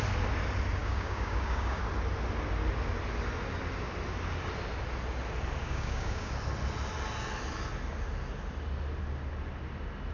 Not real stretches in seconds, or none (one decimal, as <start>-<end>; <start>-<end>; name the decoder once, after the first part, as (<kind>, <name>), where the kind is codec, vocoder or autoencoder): 0.8-1.8 (codec, DAC); 5.6-6.3